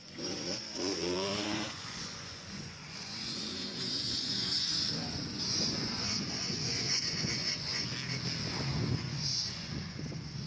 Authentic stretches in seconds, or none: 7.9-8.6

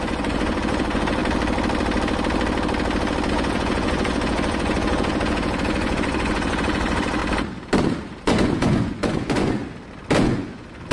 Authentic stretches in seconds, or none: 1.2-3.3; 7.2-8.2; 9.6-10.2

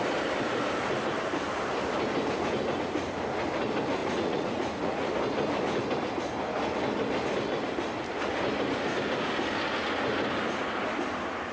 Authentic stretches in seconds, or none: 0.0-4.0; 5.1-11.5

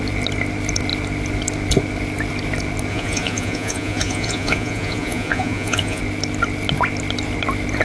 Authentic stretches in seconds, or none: 0.0-2.9; 6.0-7.8

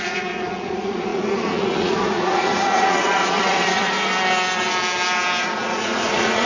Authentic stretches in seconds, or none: 4.1-5.4